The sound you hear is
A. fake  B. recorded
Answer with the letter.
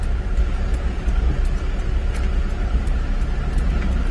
B